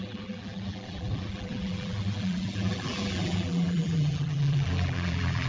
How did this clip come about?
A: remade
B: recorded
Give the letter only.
A